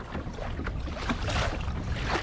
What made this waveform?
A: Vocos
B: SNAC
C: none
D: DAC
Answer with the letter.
C